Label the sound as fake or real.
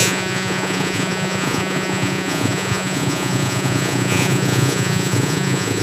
fake